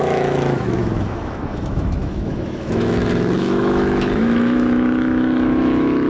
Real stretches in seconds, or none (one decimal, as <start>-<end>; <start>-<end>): none